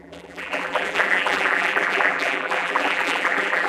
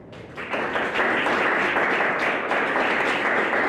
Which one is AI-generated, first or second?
first